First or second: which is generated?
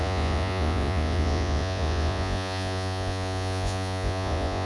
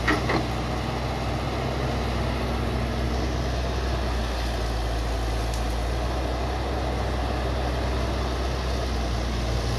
first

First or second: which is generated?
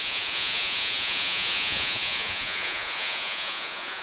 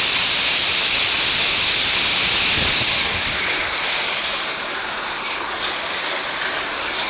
first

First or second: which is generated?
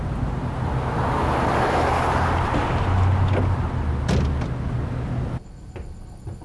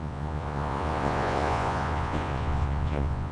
second